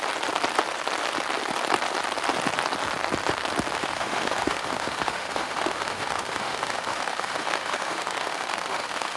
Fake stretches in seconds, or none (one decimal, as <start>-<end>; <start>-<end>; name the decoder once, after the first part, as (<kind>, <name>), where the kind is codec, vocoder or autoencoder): 3.8-9.2 (autoencoder, DAC-VAE)